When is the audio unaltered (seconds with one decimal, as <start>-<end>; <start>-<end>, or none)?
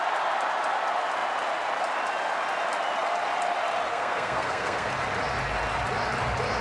0.0-3.9; 4.9-6.6